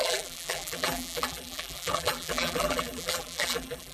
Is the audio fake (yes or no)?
yes